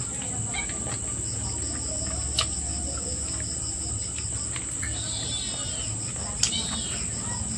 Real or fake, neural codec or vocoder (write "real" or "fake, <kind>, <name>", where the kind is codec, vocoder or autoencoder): real